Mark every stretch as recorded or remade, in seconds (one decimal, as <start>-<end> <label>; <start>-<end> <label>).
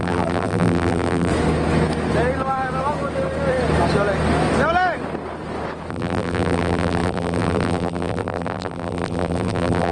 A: 0.0-1.3 remade; 1.3-5.9 recorded; 5.9-9.9 remade